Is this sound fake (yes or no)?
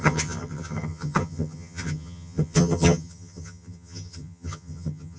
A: yes